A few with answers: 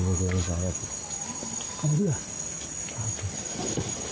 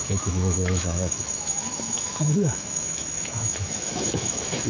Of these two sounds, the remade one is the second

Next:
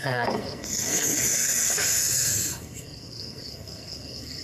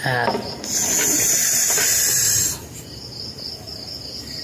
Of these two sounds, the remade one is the first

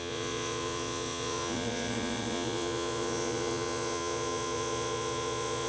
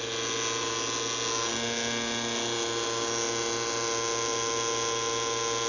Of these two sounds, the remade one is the first